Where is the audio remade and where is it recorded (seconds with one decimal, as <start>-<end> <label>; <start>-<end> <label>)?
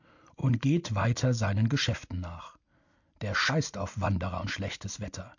0.0-5.4 recorded